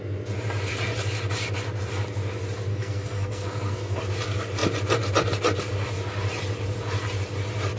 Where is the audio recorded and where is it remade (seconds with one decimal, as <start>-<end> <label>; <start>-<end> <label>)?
0.0-2.7 recorded; 2.7-4.0 remade; 4.0-7.8 recorded